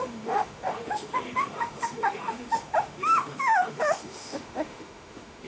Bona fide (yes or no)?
no